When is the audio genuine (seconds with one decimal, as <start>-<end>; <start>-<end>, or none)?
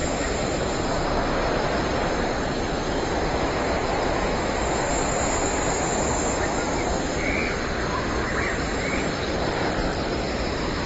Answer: 0.0-8.2